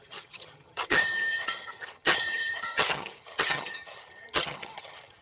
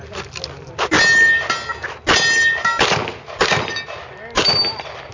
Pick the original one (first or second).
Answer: second